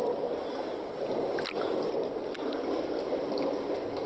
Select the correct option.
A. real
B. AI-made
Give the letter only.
A